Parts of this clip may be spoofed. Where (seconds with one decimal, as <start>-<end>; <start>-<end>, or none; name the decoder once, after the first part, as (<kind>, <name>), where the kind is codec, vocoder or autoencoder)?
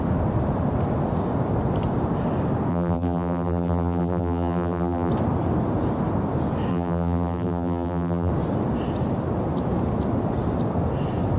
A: 2.7-5.1 (vocoder, BigVGAN v2); 6.7-8.3